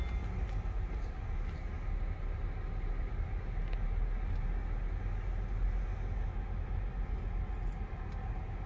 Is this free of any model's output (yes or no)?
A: yes